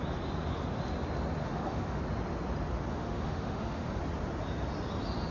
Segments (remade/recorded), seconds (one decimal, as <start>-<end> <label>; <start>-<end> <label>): 0.0-1.4 recorded; 1.4-2.0 remade; 2.0-2.9 recorded; 2.9-4.0 remade; 4.0-5.3 recorded